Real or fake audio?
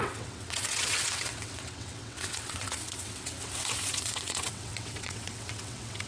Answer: fake